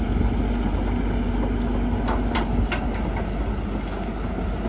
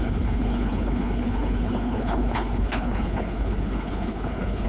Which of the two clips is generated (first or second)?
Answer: second